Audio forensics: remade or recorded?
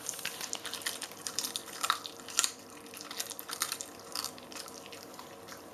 recorded